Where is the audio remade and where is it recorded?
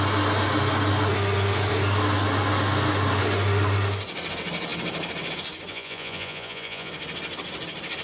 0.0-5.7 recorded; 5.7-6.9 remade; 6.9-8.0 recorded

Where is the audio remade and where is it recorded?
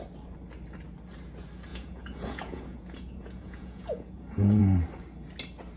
0.0-1.7 recorded; 1.7-4.6 remade; 4.6-5.8 recorded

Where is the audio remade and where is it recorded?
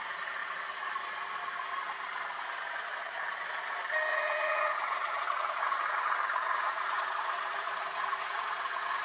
0.0-4.1 recorded; 4.1-5.7 remade; 5.7-6.4 recorded; 6.4-9.0 remade